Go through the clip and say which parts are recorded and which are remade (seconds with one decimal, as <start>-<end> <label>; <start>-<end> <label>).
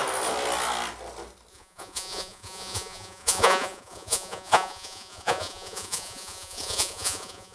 0.0-1.5 recorded; 1.5-7.5 remade